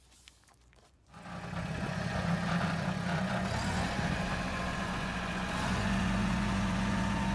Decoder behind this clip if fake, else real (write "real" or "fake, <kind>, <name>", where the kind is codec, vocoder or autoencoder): fake, vocoder, Vocos